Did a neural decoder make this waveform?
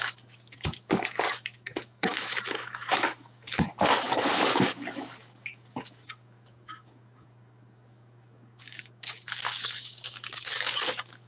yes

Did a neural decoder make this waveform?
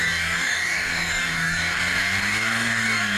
yes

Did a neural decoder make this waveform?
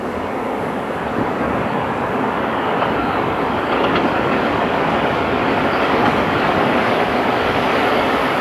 yes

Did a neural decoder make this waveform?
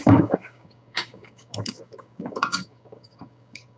yes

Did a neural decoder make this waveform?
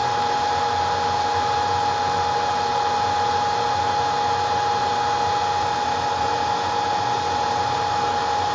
no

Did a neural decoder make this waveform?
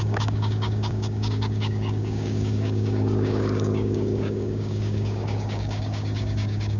yes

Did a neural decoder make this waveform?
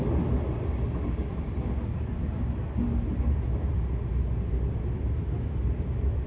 no